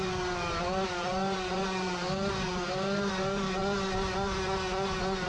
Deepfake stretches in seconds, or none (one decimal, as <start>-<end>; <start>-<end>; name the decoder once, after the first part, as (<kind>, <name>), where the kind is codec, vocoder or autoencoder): 0.0-3.6 (vocoder, BigVGAN v2)

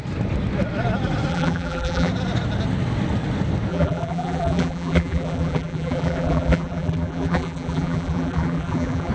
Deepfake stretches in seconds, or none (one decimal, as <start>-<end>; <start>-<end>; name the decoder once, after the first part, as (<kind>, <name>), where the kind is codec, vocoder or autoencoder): 1.3-2.1 (vocoder, BigVGAN v2); 3.7-9.1